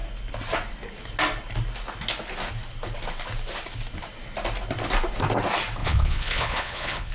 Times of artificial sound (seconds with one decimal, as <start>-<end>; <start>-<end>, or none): 5.8-7.1